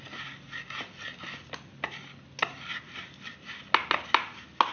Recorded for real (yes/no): yes